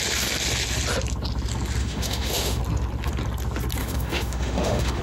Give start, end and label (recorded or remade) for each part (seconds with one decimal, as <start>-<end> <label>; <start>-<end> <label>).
0.0-1.8 recorded; 1.8-2.6 remade; 2.6-3.8 recorded; 3.8-5.0 remade